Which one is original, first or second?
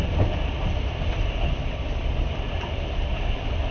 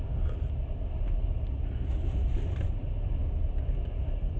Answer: second